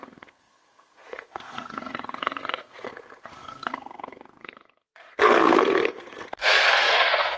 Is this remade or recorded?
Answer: remade